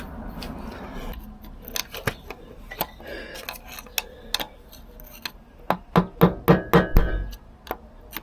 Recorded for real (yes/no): yes